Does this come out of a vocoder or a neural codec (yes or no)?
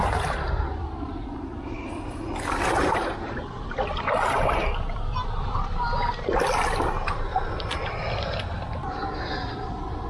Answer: yes